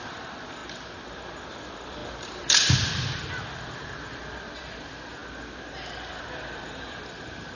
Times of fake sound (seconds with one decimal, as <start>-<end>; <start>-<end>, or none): 0.0-0.6; 1.5-5.2; 6.4-7.6